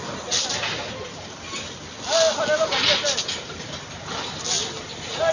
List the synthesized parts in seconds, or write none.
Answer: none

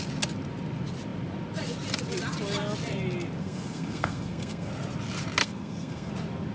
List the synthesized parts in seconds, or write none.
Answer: 3.4-4.7 (codec, SNAC); 5.4-6.1

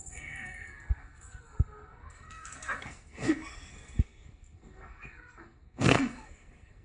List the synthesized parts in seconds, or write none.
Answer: 0.0-6.8 (codec, SNAC)

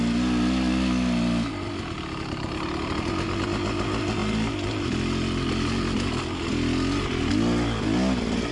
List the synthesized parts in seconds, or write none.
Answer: none